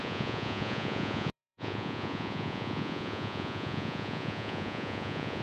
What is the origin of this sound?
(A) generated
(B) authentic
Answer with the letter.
A